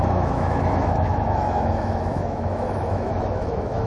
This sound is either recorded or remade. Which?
remade